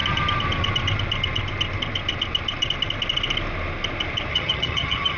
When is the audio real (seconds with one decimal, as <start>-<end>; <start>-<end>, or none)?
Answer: 0.0-4.3